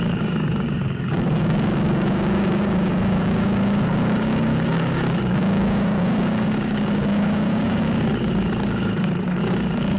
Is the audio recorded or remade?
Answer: remade